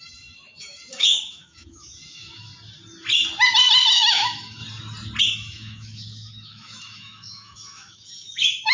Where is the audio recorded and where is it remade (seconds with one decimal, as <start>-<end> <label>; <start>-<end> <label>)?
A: 0.0-2.5 remade; 2.5-3.9 recorded; 3.9-4.6 remade; 4.6-5.2 recorded; 5.2-8.7 remade